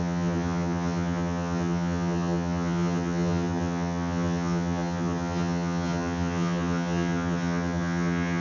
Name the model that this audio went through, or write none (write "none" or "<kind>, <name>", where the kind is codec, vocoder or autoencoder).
vocoder, HiFi-GAN